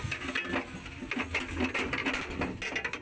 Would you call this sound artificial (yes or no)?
no